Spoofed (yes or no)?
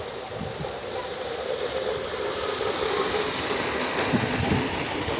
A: no